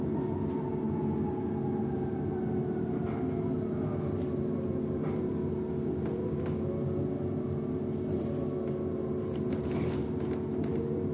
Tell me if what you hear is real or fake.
real